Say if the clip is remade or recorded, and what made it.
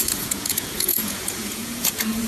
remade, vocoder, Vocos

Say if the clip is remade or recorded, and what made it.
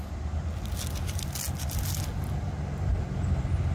recorded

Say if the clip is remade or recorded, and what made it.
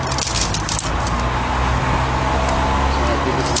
recorded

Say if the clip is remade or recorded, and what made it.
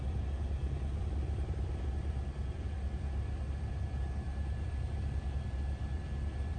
remade, vocoder, BigVGAN v2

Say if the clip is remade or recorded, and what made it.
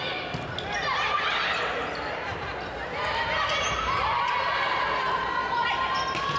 recorded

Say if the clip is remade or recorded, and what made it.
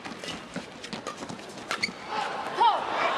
recorded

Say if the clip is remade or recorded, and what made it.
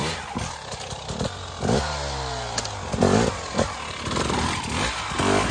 recorded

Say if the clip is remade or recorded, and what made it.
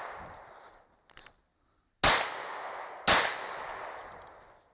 recorded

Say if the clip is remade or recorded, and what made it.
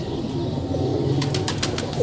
recorded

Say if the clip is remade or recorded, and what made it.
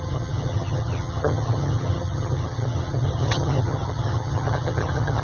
remade, vocoder, HiFi-GAN